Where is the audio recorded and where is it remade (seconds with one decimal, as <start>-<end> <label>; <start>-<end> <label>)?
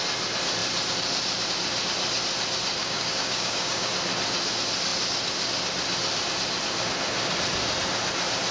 0.0-2.8 recorded; 2.8-3.9 remade; 3.9-8.5 recorded